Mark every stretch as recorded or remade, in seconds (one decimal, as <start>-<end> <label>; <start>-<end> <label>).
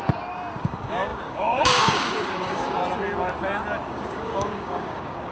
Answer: 0.0-0.6 recorded; 0.6-2.8 remade; 2.8-3.9 recorded; 3.9-5.3 remade